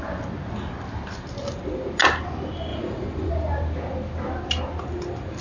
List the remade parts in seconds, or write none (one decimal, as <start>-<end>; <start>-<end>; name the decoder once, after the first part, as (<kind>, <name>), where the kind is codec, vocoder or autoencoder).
2.7-3.3 (vocoder, Vocos)